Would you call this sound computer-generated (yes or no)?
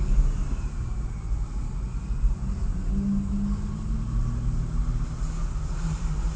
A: no